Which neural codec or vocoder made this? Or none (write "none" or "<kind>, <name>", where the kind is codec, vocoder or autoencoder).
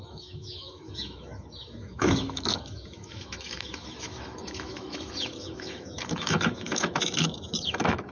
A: autoencoder, DAC-VAE